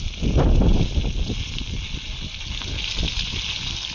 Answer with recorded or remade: recorded